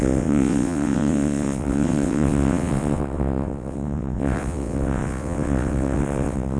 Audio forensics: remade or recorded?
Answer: remade